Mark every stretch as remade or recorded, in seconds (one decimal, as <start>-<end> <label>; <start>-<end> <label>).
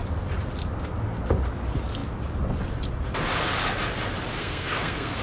0.0-4.4 recorded; 4.4-5.2 remade